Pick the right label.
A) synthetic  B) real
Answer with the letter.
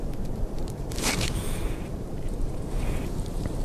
A